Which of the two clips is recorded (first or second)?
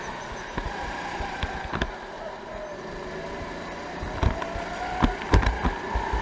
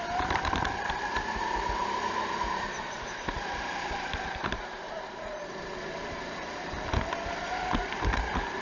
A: first